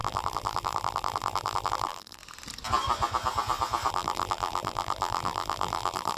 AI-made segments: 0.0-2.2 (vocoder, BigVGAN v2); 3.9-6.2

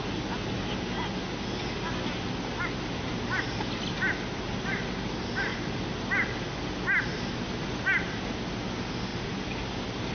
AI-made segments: 5.5-6.0 (vocoder, BigVGAN v2); 7.1-8.3; 9.1-9.6

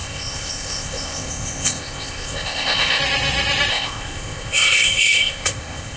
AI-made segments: 0.0-3.0 (codec, ZipCodec); 3.7-6.0

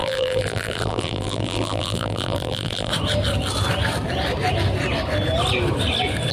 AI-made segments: 0.0-2.9 (vocoder, BigVGAN v2)

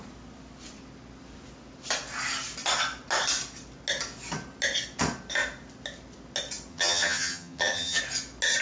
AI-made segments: 6.7-8.0 (vocoder, HiFi-GAN)